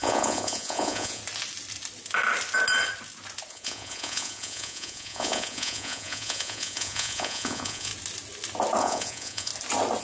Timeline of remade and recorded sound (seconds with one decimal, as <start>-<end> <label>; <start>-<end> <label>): 0.0-1.2 remade; 1.2-3.5 recorded; 3.5-7.9 remade; 7.9-8.8 recorded; 8.8-9.5 remade; 9.5-10.0 recorded